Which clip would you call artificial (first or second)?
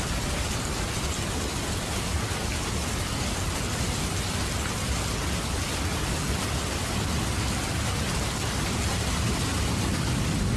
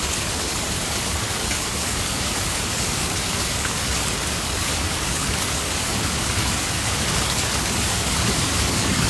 second